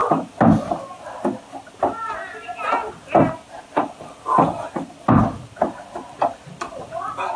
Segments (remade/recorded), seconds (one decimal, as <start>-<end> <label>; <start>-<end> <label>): 0.0-0.6 remade; 0.6-2.8 recorded; 2.8-6.9 remade; 6.9-7.4 recorded